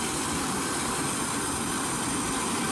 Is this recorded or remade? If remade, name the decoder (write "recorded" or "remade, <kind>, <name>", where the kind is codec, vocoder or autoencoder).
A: recorded